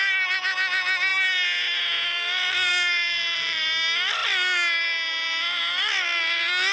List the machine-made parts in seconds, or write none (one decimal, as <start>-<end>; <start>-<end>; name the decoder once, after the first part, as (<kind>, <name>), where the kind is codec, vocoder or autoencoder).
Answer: 2.7-3.6 (autoencoder, DAC-VAE)